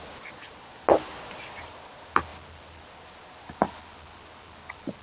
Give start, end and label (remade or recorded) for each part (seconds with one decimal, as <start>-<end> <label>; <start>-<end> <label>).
0.0-5.0 recorded